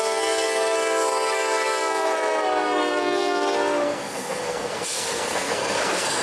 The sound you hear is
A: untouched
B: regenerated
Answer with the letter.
B